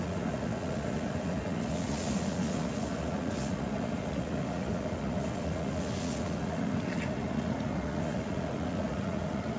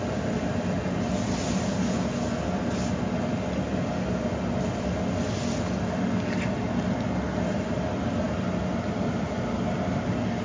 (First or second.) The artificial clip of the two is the first